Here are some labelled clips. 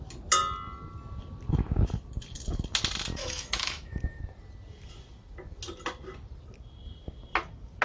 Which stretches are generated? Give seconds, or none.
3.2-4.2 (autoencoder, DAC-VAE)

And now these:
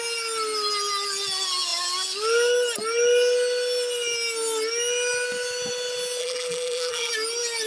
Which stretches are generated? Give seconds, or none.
6.2-7.1 (vocoder, BigVGAN v2)

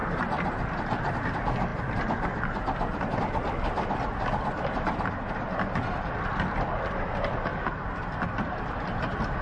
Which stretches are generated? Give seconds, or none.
none

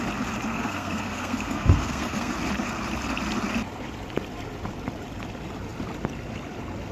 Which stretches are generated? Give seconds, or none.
0.5-2.3 (codec, SNAC)

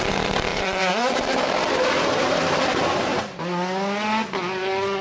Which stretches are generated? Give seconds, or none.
0.5-2.8 (vocoder, BigVGAN v2)

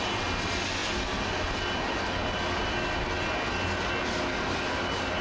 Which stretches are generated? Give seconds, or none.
none

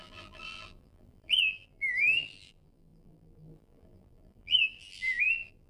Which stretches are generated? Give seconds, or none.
0.0-5.7 (vocoder, BigVGAN v2)

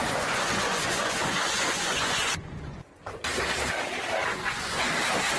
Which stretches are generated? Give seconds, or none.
0.0-3.2 (vocoder, Vocos); 4.3-4.9